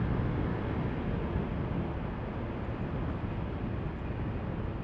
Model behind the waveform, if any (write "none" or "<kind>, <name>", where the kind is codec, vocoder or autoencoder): none